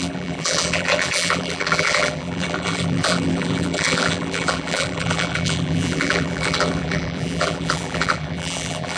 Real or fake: fake